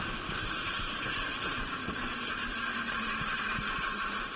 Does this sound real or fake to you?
real